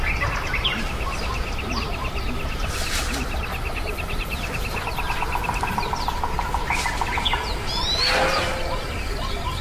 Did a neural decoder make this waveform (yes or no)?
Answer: no